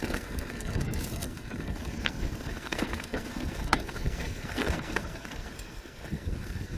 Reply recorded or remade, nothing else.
remade